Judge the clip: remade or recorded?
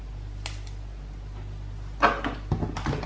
recorded